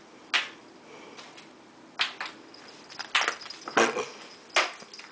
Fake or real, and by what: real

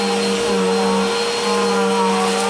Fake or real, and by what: real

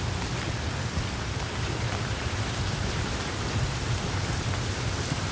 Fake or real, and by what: real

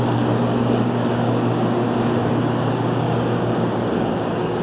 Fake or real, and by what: fake, codec, DAC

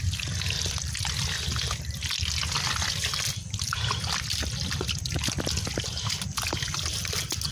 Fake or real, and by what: real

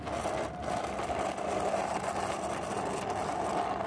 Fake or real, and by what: real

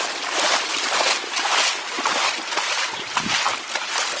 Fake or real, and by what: real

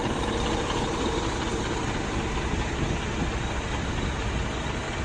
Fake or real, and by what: real